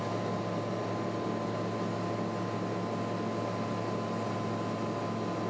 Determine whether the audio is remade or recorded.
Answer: recorded